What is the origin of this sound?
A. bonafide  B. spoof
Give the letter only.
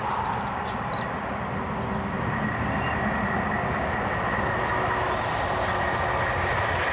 A